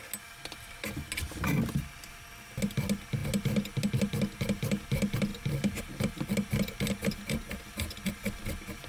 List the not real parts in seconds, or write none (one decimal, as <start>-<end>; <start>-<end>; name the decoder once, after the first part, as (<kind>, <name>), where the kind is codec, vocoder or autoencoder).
none